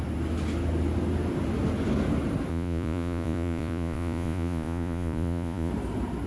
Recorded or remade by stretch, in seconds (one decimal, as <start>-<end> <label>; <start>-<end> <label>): 0.0-2.5 recorded; 2.5-5.7 remade; 5.7-6.3 recorded